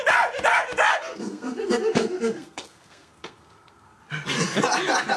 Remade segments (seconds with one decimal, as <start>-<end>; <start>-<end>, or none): 0.9-4.0